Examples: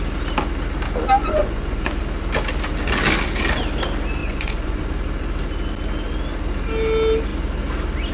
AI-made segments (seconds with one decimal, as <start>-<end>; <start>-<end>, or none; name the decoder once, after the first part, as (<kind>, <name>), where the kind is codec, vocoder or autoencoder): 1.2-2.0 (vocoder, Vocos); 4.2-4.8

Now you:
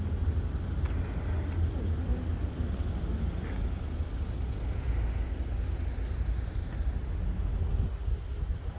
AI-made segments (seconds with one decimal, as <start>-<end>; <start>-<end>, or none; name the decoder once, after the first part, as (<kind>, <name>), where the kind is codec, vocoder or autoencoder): none

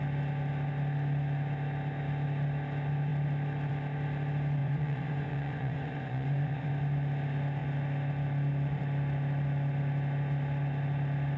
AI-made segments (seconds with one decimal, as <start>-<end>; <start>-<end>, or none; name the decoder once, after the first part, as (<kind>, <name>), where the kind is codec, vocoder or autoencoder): 4.6-6.7 (vocoder, Vocos)

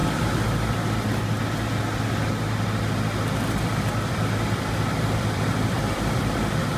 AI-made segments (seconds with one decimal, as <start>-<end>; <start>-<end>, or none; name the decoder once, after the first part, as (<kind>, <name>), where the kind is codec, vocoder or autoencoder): 4.1-6.8 (vocoder, BigVGAN v2)